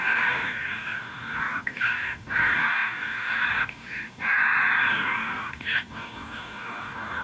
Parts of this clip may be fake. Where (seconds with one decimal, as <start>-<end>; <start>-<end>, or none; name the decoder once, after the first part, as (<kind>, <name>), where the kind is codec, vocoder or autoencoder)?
0.0-4.4 (codec, DAC); 4.9-7.2

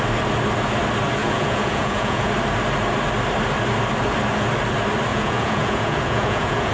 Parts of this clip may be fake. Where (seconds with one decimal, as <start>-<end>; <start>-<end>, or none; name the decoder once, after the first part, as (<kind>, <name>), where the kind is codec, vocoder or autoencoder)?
1.2-2.3 (vocoder, Vocos); 5.1-6.7

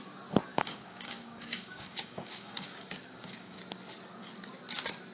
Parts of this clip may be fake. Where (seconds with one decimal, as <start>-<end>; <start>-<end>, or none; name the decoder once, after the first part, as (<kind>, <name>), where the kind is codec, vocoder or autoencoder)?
0.5-3.6 (codec, DAC)

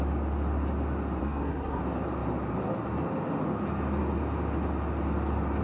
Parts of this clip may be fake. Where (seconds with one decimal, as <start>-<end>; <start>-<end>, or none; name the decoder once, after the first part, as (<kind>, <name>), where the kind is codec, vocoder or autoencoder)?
1.2-1.8 (codec, SNAC)

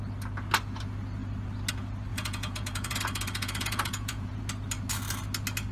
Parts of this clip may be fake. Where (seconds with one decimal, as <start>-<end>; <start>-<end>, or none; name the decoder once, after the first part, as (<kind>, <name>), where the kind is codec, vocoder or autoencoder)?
2.1-4.4 (vocoder, Vocos)

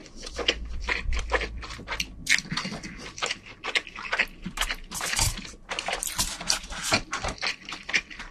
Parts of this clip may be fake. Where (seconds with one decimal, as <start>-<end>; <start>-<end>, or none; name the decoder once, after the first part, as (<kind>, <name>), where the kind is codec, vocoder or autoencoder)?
0.0-2.2 (vocoder, BigVGAN v2); 5.0-8.3